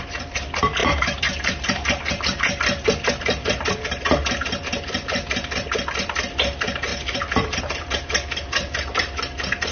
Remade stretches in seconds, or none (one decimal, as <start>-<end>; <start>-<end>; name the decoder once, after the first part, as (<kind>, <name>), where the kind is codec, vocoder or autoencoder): 0.8-2.2 (vocoder, BigVGAN v2); 6.9-7.6